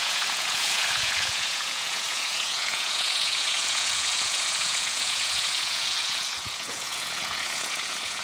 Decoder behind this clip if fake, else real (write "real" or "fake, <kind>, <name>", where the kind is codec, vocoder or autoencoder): fake, vocoder, Vocos